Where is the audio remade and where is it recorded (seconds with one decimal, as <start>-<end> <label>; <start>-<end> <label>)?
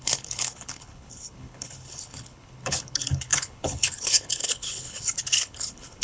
0.0-6.0 remade